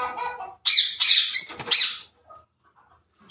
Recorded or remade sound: recorded